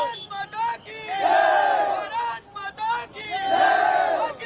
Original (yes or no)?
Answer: yes